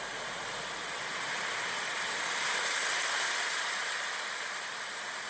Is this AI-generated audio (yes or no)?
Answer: no